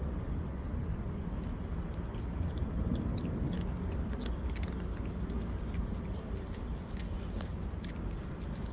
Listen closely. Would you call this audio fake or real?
real